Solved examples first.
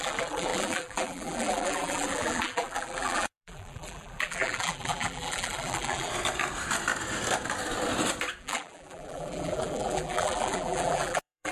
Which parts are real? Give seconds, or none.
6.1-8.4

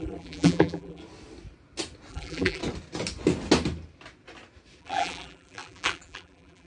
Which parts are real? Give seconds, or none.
1.0-2.1; 2.6-4.8

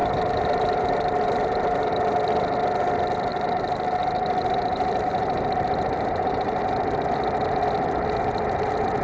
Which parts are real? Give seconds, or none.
1.9-3.3; 6.6-9.0

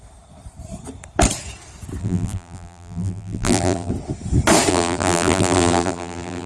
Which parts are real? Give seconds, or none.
0.0-2.0; 3.9-4.7

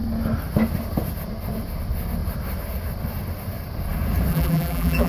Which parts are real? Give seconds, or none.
0.0-4.3

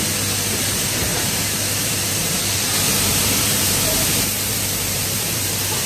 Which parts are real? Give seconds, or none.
0.0-1.1; 2.4-3.1; 5.5-5.9

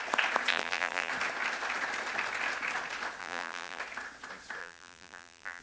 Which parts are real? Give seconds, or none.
0.0-0.5; 1.1-3.2; 3.8-4.6

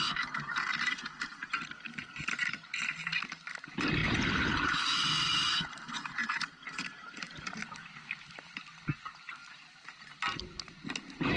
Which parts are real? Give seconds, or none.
0.0-4.0; 5.9-11.4